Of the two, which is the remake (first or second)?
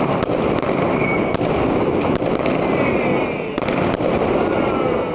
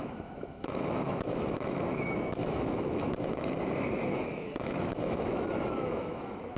second